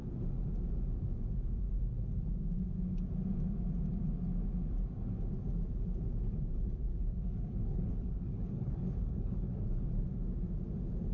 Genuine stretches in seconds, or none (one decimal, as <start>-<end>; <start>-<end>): 0.0-6.9; 10.0-11.1

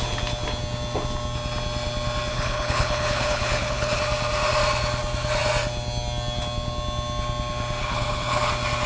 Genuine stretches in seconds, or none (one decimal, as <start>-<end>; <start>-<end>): 0.0-2.3; 4.0-7.8; 8.5-8.9

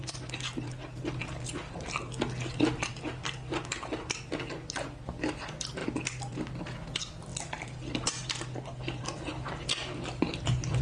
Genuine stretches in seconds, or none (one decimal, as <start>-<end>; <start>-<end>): 0.0-10.8

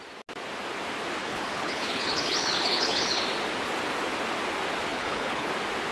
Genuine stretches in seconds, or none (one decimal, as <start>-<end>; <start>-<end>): 0.0-1.2; 3.2-4.9; 5.5-5.9

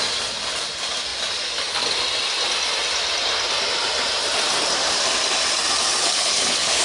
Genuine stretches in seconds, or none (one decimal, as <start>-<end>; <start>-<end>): 0.0-6.0

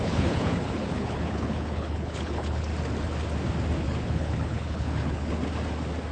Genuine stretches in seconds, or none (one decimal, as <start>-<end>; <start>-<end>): 2.7-3.8; 5.4-6.1

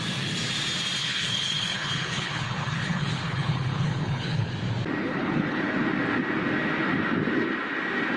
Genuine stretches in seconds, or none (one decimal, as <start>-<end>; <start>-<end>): 0.0-1.0; 4.5-5.0; 5.6-8.2

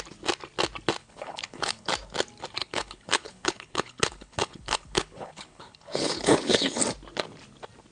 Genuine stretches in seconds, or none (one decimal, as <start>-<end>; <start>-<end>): 0.0-1.0; 1.9-2.6; 6.8-7.9